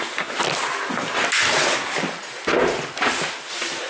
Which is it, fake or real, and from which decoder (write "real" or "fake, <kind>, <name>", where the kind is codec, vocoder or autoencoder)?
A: real